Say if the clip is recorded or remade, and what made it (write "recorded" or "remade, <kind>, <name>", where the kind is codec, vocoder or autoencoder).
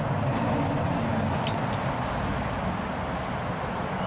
recorded